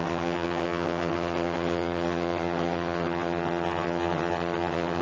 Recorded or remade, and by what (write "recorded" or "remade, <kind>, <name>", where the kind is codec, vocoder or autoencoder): remade, vocoder, HiFi-GAN